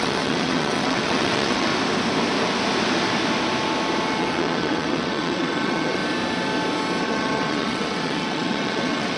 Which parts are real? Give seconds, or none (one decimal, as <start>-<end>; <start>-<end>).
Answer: 1.7-4.2; 6.0-7.0